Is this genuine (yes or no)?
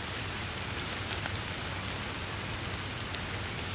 yes